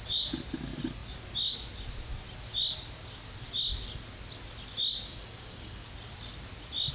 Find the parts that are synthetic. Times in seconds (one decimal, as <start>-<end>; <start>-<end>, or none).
5.1-5.9